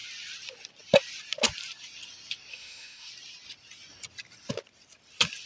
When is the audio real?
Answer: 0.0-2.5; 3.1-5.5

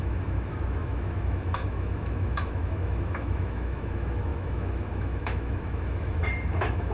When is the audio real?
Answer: none